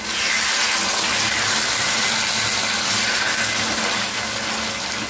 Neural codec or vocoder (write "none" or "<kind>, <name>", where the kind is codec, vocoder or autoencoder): none